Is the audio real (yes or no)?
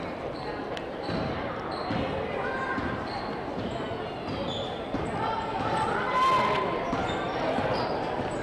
yes